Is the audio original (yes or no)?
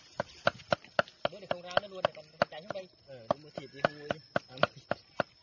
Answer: yes